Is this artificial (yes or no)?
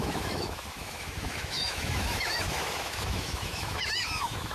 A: yes